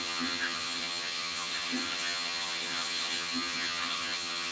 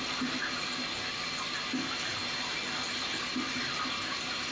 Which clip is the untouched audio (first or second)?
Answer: second